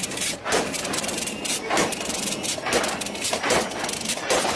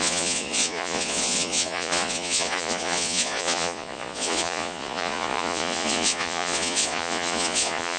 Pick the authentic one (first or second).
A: first